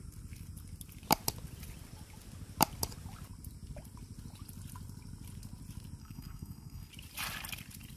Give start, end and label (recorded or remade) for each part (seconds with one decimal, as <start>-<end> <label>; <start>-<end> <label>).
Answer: 0.0-6.0 recorded; 6.0-6.9 remade; 6.9-8.0 recorded